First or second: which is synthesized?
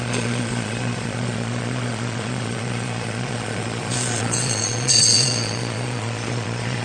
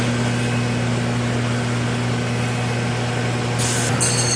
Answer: first